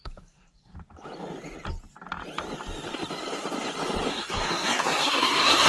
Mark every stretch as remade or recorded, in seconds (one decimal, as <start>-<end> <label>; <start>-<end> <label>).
0.0-0.7 remade; 0.7-4.1 recorded; 4.1-5.7 remade